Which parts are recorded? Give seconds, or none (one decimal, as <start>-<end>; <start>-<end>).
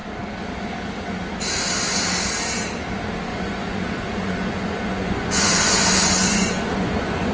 0.0-3.3